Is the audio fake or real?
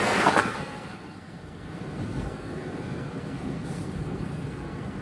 fake